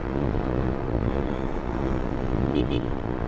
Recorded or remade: remade